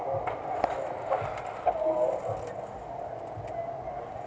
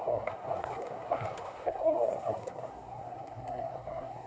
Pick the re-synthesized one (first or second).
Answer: second